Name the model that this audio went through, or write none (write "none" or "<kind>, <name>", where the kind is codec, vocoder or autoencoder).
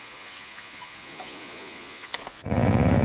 vocoder, Vocos